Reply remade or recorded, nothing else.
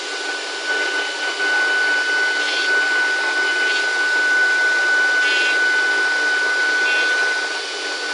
recorded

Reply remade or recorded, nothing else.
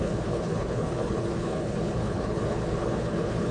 remade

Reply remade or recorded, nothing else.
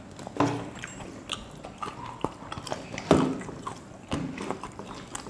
recorded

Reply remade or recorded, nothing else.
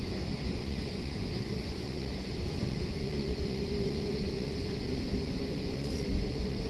remade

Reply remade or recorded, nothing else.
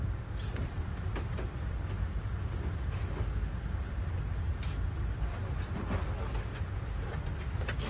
recorded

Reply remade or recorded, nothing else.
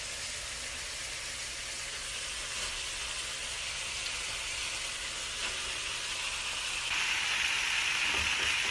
recorded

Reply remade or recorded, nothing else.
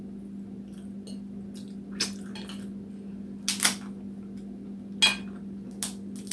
recorded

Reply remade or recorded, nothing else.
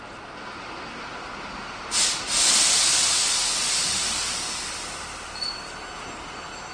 recorded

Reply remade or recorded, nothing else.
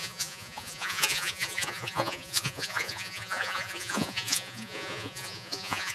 remade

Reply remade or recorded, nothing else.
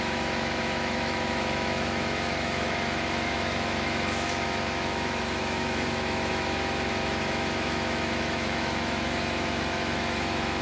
remade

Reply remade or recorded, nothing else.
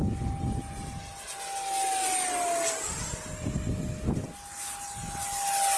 recorded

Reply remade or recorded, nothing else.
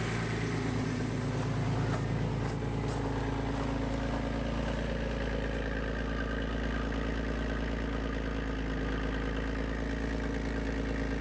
recorded